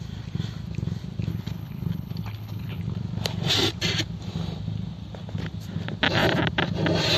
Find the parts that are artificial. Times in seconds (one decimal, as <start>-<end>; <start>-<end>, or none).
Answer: 1.3-2.8